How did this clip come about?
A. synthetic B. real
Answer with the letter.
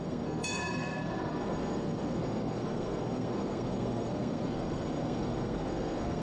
A